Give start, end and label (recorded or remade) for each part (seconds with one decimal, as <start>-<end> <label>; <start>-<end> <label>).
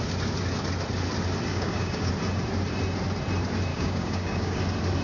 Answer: 0.0-1.5 recorded; 1.5-2.1 remade; 2.1-3.7 recorded; 3.7-4.6 remade; 4.6-5.0 recorded